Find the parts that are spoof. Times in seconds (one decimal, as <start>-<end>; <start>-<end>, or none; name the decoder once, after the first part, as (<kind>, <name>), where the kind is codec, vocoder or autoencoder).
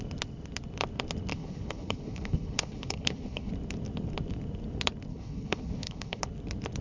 1.3-3.5 (codec, HILCodec); 5.1-6.2